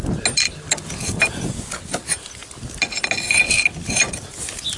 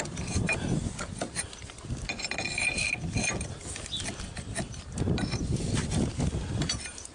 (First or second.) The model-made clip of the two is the second